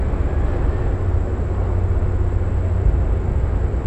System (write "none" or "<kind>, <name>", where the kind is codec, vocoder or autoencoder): none